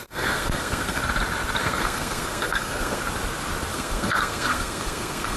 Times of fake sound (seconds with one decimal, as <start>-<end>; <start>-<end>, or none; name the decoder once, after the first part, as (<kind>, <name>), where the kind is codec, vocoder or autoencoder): 0.0-1.0 (codec, SNAC); 1.6-3.0; 3.7-5.4